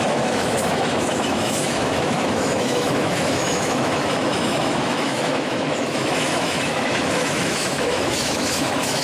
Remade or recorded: remade